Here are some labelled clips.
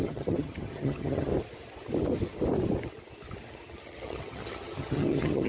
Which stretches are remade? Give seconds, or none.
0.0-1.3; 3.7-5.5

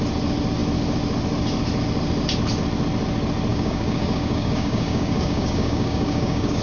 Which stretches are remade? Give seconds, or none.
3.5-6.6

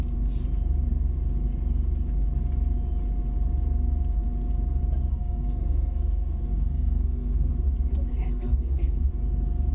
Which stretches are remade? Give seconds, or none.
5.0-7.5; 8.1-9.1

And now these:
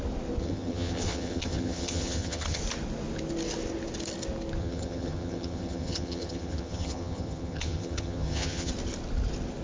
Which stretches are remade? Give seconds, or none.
0.4-2.6; 4.6-8.7